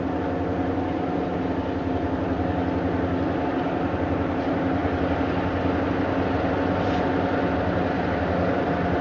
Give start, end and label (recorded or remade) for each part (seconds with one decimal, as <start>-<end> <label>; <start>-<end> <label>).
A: 0.0-9.0 recorded